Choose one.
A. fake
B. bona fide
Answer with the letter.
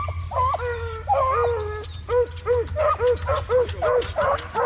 B